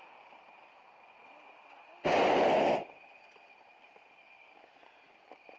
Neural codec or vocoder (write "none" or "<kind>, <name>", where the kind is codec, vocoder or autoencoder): none